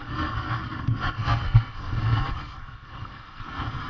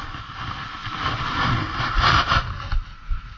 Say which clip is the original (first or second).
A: second